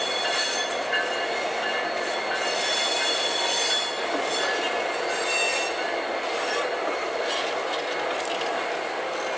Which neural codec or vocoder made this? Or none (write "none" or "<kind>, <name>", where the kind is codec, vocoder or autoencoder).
none